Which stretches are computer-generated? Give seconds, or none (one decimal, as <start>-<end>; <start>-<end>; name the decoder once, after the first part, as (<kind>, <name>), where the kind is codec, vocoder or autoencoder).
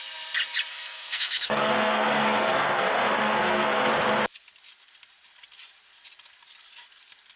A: 0.7-3.9 (codec, SNAC)